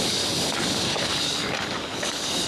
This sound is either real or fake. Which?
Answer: fake